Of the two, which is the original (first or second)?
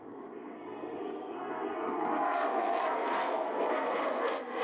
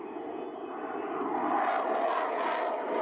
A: second